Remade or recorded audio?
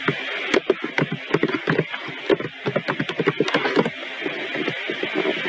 recorded